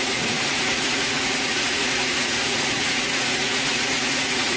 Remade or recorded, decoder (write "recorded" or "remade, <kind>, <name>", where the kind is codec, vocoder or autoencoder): remade, vocoder, Vocos